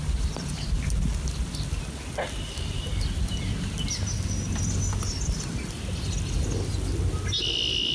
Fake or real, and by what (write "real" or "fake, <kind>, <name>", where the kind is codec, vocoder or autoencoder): real